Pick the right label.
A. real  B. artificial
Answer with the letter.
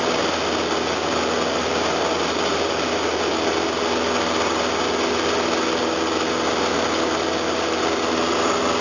A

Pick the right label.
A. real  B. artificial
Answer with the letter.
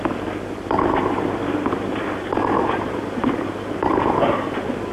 A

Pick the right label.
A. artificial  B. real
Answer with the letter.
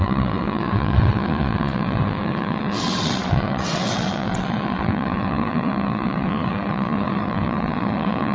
A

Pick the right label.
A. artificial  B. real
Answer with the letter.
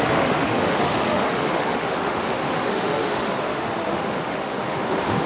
A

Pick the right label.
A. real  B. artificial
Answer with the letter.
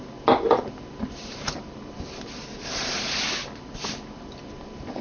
A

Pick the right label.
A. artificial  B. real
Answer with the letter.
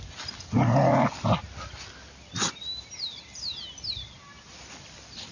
B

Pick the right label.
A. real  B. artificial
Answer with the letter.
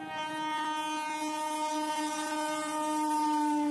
A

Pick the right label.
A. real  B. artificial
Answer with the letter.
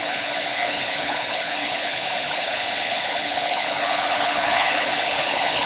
B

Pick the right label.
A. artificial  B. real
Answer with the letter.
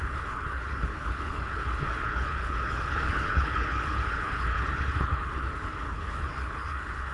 A